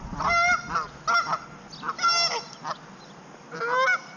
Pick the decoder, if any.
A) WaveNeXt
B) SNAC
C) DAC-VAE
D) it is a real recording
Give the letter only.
D